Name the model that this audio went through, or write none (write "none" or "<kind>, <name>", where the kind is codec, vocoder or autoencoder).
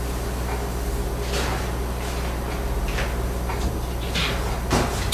none